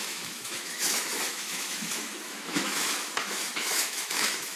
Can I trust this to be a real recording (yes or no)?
no